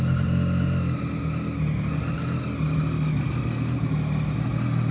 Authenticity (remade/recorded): recorded